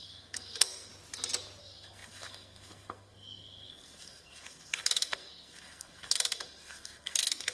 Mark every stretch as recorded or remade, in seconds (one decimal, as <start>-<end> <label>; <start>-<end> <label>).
0.0-0.9 remade; 0.9-1.6 recorded; 1.6-7.5 remade